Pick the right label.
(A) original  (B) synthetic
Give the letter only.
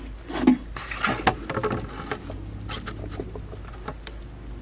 A